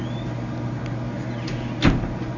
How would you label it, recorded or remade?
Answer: recorded